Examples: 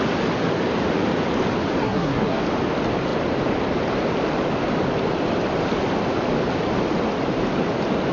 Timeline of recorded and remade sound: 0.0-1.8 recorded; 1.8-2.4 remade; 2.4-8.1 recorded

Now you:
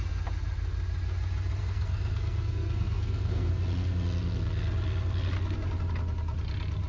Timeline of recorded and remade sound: 0.0-1.6 recorded; 1.6-3.5 remade; 3.5-6.9 recorded